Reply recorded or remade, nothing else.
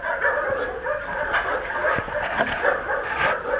recorded